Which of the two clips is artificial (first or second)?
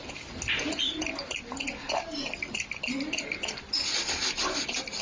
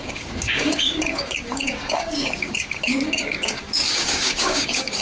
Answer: second